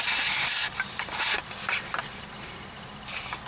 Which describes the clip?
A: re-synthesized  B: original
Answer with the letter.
B